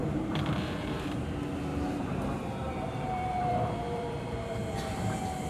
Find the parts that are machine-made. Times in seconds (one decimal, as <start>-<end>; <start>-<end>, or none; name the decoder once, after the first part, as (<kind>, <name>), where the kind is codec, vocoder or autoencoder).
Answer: 0.0-1.2 (vocoder, BigVGAN v2); 1.7-4.7